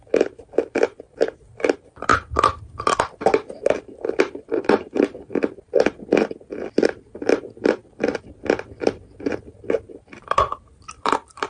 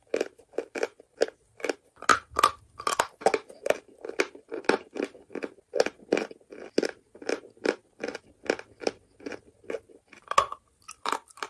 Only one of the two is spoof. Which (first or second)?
first